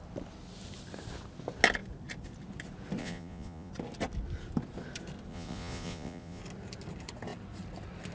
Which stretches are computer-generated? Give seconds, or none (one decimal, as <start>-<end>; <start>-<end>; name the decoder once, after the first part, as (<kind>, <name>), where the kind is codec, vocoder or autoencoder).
3.0-3.7 (vocoder, Vocos); 5.3-6.4